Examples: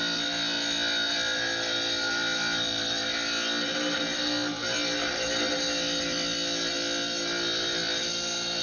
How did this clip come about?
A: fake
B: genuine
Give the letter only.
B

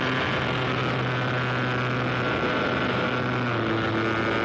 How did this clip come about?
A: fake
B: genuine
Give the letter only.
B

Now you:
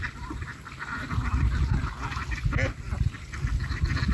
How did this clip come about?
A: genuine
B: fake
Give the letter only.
A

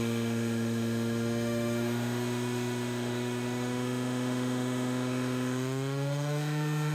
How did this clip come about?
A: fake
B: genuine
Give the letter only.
A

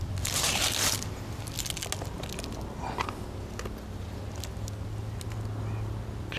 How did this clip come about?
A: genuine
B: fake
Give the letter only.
A